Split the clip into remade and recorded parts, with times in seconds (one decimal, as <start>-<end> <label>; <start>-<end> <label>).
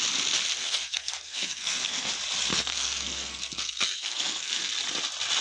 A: 0.0-0.6 recorded; 0.6-2.1 remade; 2.1-2.5 recorded; 2.5-4.7 remade; 4.7-5.4 recorded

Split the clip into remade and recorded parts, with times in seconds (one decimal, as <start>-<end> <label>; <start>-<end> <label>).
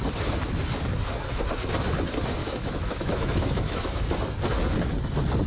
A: 0.0-2.4 recorded; 2.4-4.1 remade; 4.1-5.5 recorded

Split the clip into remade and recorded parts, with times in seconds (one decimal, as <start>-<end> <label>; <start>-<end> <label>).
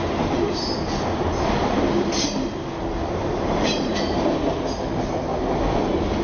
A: 0.0-6.2 recorded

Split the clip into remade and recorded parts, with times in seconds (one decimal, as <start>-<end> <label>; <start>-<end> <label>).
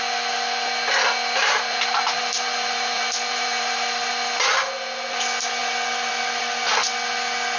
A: 0.0-1.4 recorded; 1.4-4.1 remade; 4.1-7.6 recorded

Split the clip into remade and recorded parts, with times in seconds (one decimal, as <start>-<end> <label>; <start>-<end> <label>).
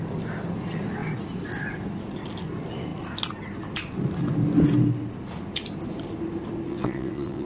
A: 0.0-6.7 recorded; 6.7-7.5 remade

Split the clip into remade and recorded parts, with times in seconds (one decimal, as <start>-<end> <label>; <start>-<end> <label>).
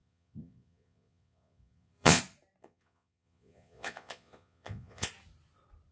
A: 0.0-2.2 remade; 2.2-2.6 recorded; 2.6-5.1 remade; 5.1-5.9 recorded